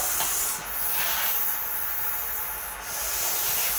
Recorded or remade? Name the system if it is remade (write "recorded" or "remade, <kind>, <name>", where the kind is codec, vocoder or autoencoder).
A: recorded